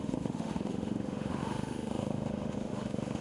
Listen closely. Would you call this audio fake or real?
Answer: fake